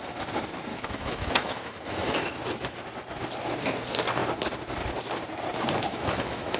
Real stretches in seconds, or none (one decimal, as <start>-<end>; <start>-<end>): 0.0-0.7; 2.4-5.9